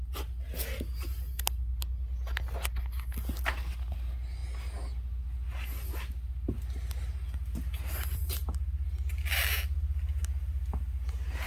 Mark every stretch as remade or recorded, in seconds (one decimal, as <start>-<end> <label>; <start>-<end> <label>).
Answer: 0.0-11.5 recorded